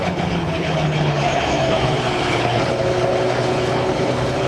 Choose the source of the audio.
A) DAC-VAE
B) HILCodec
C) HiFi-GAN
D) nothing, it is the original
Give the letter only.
B